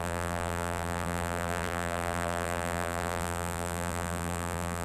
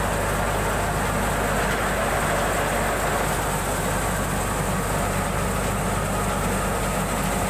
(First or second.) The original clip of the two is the second